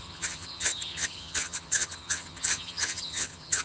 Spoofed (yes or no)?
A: yes